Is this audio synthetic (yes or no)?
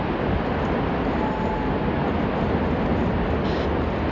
no